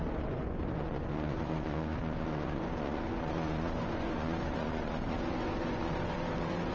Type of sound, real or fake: fake